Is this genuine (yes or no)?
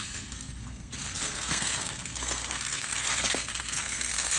no